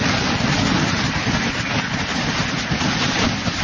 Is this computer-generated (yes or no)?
no